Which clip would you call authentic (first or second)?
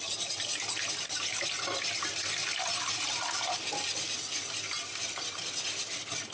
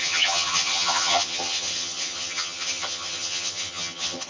first